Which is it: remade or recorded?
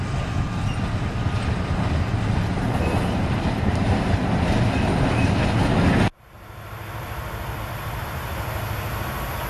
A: recorded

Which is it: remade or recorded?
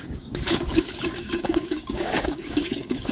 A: remade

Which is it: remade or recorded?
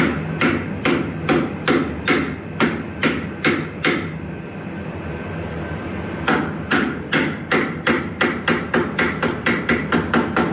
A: recorded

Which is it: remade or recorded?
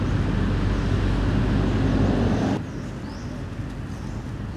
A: recorded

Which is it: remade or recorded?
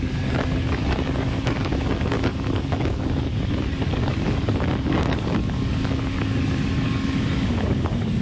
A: remade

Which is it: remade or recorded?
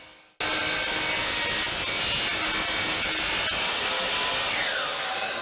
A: recorded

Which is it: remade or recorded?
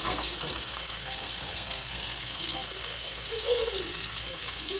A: remade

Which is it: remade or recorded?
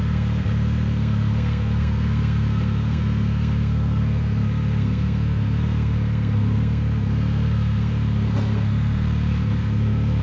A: remade